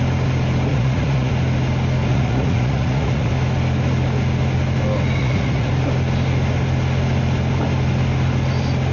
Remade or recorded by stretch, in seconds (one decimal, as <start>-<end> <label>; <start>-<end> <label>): 0.0-0.7 recorded; 0.7-1.3 remade; 1.3-2.1 recorded; 2.1-3.3 remade; 3.3-5.2 recorded; 5.2-5.7 remade; 5.7-8.9 recorded